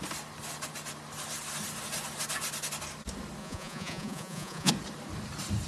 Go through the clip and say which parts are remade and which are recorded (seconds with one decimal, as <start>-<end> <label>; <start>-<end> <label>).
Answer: 0.0-3.4 recorded; 3.4-4.7 remade; 4.7-5.7 recorded